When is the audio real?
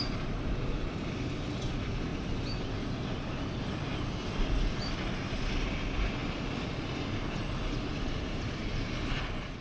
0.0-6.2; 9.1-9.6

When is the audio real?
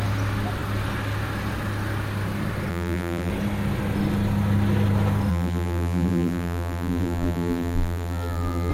0.0-2.7; 3.3-5.3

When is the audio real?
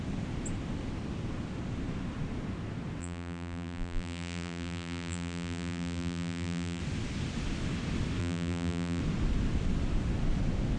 0.0-3.0; 6.8-8.2; 9.0-10.8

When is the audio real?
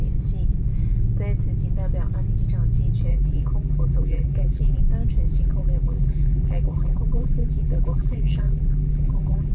0.0-3.1; 4.8-5.3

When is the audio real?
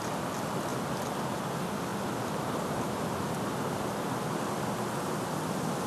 0.0-5.9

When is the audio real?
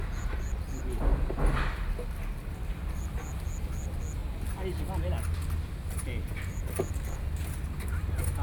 0.0-8.4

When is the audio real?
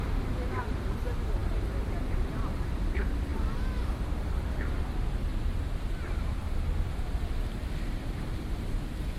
5.3-6.3